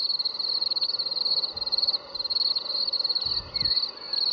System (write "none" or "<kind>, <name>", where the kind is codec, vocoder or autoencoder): none